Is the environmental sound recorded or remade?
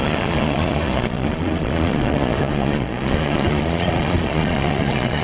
remade